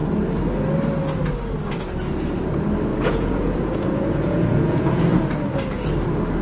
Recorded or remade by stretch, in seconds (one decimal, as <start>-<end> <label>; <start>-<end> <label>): 0.0-2.9 recorded; 2.9-5.0 remade; 5.0-6.4 recorded

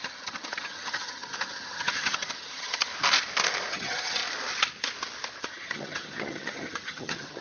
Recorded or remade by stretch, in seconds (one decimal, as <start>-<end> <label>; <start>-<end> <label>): 0.0-2.9 remade; 2.9-3.7 recorded; 3.7-4.2 remade; 4.2-5.4 recorded; 5.4-7.4 remade

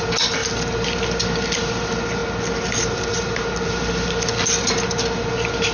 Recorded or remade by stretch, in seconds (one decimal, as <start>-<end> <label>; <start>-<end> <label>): 0.0-5.7 recorded

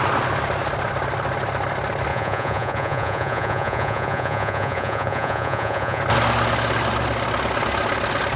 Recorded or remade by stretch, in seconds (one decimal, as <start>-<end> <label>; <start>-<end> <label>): 0.0-2.1 recorded; 2.1-6.0 remade; 6.0-8.4 recorded

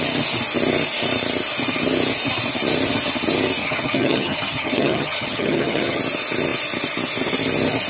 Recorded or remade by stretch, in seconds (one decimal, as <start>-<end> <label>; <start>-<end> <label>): 0.0-3.6 recorded; 3.6-6.0 remade; 6.0-7.9 recorded

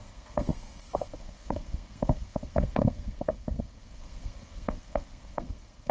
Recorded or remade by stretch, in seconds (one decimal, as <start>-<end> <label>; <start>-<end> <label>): 0.0-5.9 remade